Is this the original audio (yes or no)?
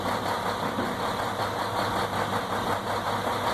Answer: yes